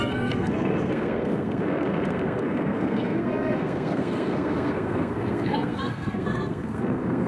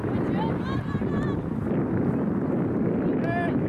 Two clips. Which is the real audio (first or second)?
second